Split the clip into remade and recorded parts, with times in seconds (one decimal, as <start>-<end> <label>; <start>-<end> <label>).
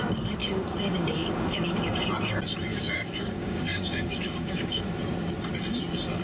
0.0-0.4 recorded; 0.4-2.0 remade; 2.0-2.7 recorded; 2.7-4.8 remade; 4.8-6.2 recorded